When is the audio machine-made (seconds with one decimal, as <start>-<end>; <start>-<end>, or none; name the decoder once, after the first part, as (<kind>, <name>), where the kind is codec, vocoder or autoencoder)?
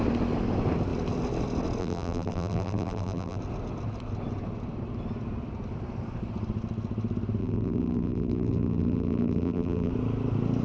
1.8-3.4 (vocoder, BigVGAN v2); 7.4-9.9